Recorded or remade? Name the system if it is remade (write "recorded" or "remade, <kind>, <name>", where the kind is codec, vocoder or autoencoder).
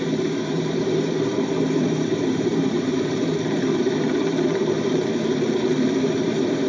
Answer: remade, vocoder, BigVGAN v2